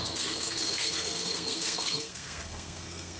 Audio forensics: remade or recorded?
remade